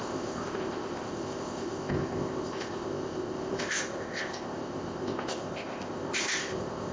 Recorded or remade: remade